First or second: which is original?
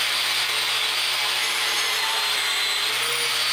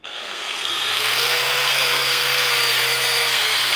first